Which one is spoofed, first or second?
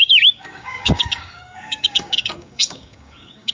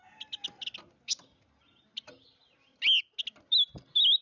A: first